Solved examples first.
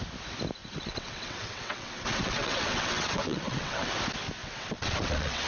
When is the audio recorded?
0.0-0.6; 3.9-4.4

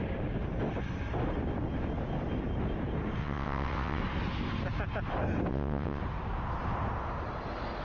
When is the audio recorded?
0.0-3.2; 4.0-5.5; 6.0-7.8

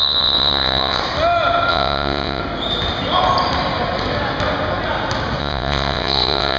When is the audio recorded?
1.0-1.7; 2.4-5.4

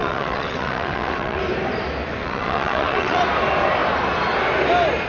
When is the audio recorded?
1.4-2.2; 3.2-5.1